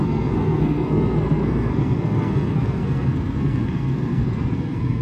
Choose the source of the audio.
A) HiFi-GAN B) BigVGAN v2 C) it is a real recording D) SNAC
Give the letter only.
D